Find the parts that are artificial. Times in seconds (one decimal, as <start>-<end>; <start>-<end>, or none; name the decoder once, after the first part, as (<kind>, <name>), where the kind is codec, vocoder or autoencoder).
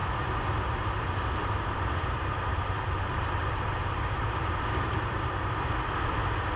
1.4-2.0 (vocoder, BigVGAN v2); 2.5-5.7